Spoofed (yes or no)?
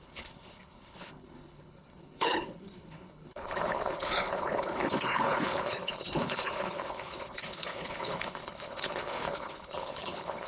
yes